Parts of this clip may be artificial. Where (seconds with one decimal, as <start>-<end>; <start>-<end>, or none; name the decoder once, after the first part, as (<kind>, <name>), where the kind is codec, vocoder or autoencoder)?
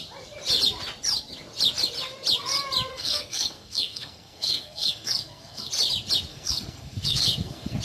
2.9-5.7 (codec, SNAC); 6.3-7.8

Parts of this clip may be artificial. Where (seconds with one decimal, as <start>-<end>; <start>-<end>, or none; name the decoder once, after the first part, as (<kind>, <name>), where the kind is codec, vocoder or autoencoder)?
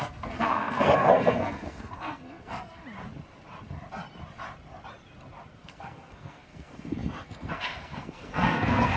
0.0-2.8 (codec, SNAC); 5.6-9.0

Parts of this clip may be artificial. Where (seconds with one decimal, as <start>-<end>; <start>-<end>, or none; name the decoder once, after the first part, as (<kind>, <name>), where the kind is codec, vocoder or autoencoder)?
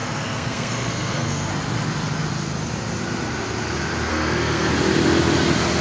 0.0-1.5 (codec, SNAC); 4.1-4.7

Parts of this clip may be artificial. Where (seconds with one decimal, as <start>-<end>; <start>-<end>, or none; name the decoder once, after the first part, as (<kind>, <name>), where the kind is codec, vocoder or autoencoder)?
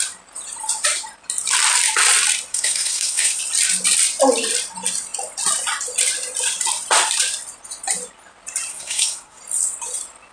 2.5-3.4 (codec, SNAC); 8.7-9.4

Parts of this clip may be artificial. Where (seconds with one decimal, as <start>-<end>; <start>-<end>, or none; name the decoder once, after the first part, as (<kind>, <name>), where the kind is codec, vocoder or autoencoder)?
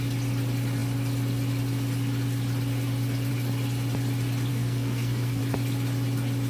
4.5-5.4 (codec, SNAC)